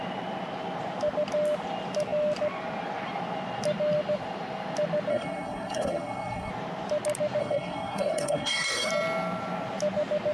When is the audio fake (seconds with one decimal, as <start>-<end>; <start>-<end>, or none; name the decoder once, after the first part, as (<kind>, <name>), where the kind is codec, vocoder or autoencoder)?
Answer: 5.1-6.5 (codec, SNAC); 7.4-8.9